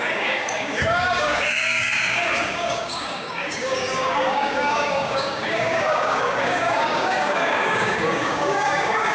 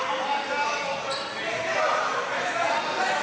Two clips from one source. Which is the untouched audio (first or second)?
second